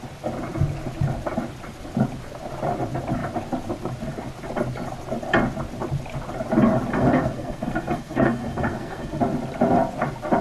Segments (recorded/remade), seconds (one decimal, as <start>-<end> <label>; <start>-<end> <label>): 0.0-6.9 recorded; 6.9-9.2 remade; 9.2-10.4 recorded